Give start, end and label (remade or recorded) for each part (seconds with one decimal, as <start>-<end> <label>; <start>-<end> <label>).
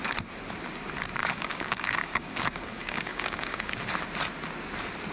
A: 0.0-1.2 recorded; 1.2-3.8 remade; 3.8-5.1 recorded